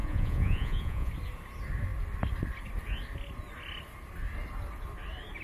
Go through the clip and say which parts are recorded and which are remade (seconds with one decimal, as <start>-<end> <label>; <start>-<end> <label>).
0.0-1.1 remade; 1.1-5.4 recorded